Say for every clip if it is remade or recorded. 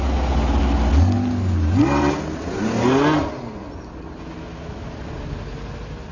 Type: recorded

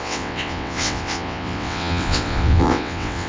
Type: remade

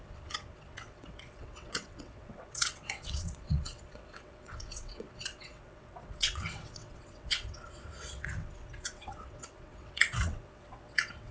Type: remade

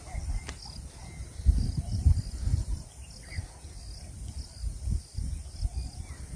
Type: recorded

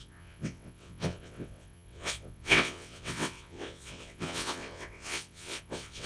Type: remade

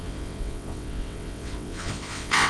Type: remade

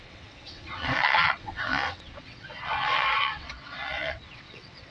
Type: remade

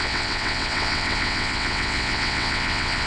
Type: remade